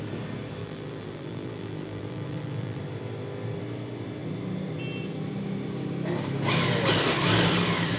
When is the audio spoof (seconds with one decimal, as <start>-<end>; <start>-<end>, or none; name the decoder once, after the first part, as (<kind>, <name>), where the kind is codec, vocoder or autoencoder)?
0.6-2.8 (vocoder, BigVGAN v2)